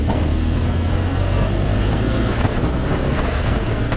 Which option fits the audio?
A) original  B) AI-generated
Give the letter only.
B